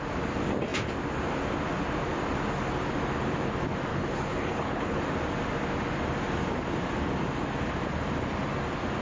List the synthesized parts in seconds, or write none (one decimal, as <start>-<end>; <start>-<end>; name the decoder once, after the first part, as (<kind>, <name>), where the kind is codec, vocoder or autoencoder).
3.9-5.0 (codec, HILCodec)